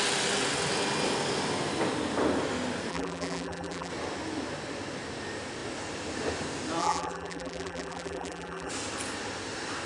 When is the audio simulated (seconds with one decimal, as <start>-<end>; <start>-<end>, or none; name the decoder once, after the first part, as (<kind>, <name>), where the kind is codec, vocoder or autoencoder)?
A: 2.9-3.9 (vocoder, BigVGAN v2); 6.8-8.7